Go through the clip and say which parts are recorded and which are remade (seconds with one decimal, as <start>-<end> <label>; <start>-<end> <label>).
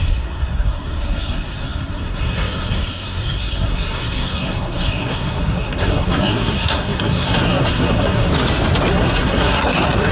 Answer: 0.0-8.3 remade; 8.3-8.9 recorded; 8.9-10.1 remade